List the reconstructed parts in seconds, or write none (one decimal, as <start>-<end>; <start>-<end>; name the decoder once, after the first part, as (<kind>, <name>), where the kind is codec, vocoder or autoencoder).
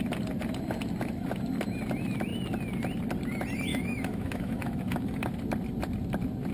3.7-5.3 (autoencoder, DAC-VAE)